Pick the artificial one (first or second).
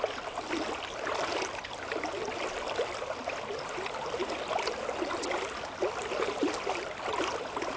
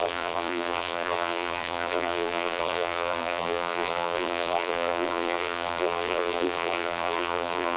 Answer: second